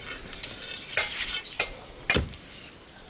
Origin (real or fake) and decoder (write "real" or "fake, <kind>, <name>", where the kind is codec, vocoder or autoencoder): real